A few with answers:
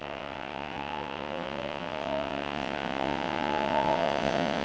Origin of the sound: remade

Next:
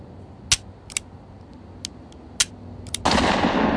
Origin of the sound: recorded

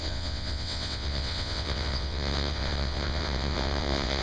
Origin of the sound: remade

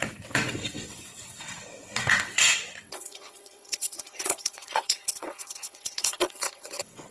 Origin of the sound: remade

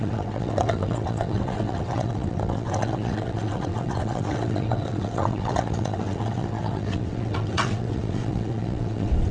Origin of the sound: remade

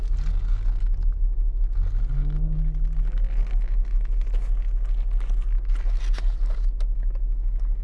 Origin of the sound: recorded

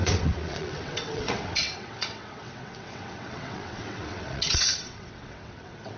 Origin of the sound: remade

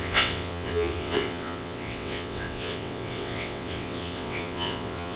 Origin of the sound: remade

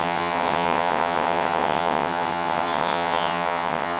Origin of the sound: remade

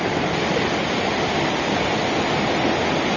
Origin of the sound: recorded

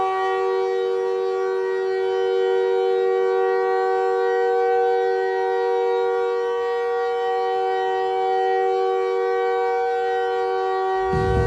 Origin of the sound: recorded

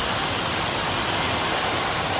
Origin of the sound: recorded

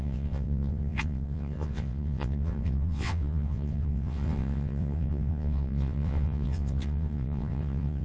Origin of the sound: remade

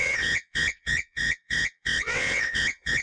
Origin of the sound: remade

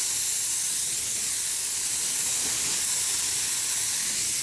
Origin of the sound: recorded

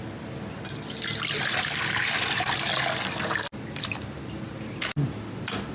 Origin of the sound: recorded